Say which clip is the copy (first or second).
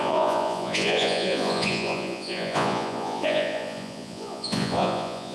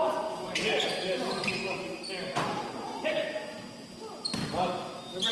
first